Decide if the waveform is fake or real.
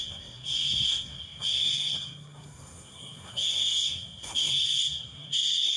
fake